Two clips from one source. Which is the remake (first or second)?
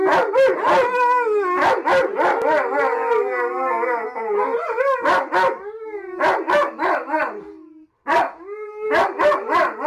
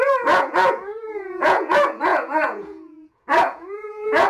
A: second